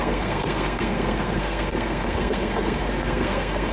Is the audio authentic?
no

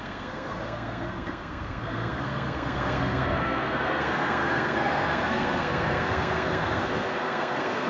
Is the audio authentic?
no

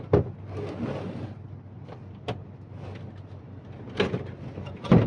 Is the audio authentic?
yes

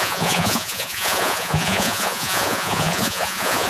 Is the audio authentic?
no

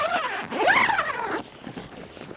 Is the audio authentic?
yes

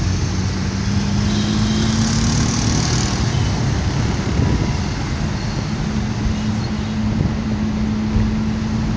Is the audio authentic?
yes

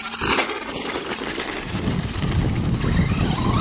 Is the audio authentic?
yes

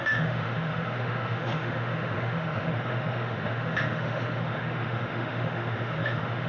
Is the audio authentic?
no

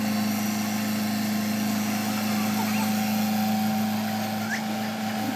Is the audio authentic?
yes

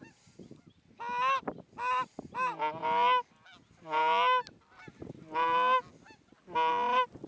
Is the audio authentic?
yes